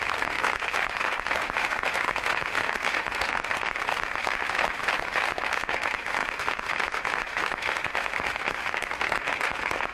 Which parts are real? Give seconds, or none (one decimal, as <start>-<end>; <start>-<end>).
none